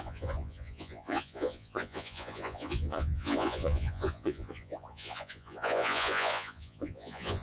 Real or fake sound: fake